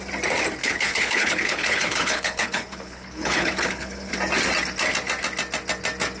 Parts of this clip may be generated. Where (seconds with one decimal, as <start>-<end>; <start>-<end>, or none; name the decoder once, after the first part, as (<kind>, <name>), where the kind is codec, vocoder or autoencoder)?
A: 0.6-4.1 (codec, HILCodec)